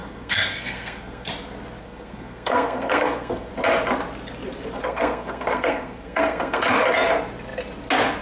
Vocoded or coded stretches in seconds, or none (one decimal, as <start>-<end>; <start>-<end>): 0.0-1.3; 1.8-3.5; 4.8-6.6